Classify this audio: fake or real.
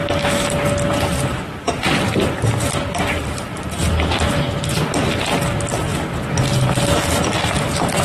real